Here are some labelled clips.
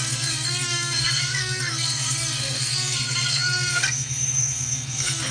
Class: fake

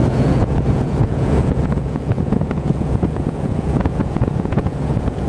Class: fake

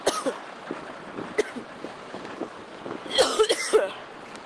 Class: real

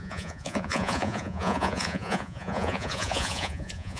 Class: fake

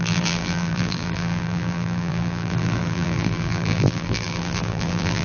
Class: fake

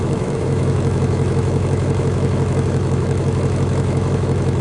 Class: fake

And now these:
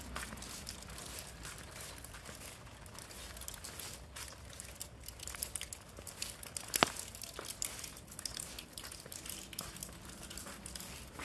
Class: real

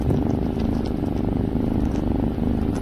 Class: real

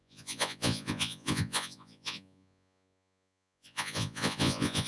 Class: fake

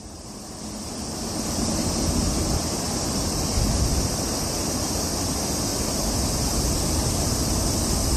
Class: real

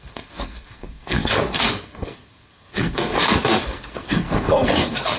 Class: fake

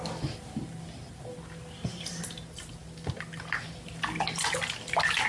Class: real